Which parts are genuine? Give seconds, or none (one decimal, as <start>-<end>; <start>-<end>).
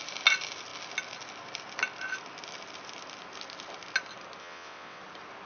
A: 0.0-4.4; 5.0-5.5